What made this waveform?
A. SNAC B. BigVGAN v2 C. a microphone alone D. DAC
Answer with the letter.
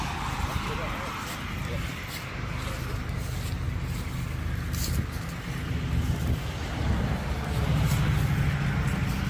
C